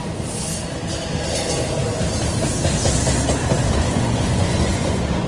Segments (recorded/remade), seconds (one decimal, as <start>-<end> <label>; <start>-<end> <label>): 0.0-3.8 recorded; 3.8-5.3 remade